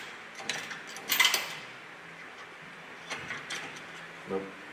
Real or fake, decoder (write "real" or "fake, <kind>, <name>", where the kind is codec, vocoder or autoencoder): real